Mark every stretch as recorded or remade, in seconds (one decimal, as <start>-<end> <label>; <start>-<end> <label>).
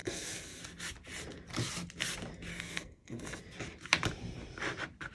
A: 0.0-0.6 remade; 0.6-2.5 recorded; 2.5-3.4 remade; 3.4-5.1 recorded